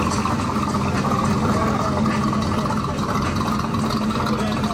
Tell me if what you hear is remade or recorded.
recorded